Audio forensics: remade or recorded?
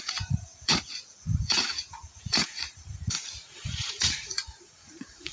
remade